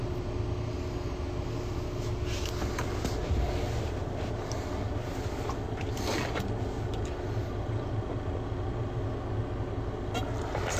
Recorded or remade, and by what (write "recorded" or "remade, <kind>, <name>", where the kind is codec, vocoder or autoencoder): recorded